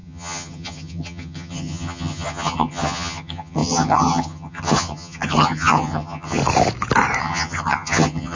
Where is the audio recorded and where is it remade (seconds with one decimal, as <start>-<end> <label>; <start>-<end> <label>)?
0.0-6.4 remade; 6.4-7.2 recorded; 7.2-8.4 remade